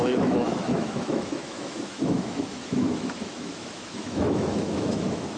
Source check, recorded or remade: remade